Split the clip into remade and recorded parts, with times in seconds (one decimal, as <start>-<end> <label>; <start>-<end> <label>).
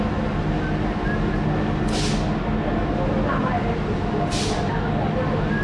0.0-5.6 recorded